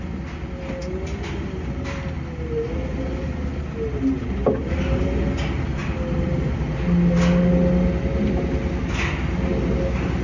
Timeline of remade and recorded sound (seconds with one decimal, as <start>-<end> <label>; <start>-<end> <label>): 0.0-10.2 recorded